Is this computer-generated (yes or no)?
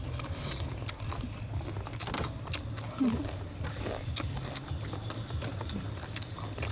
no